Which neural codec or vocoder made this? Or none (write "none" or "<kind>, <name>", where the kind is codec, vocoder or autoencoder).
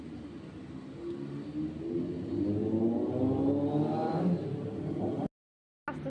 none